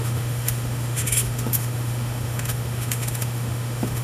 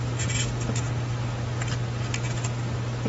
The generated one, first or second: first